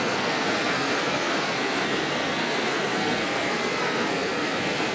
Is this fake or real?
fake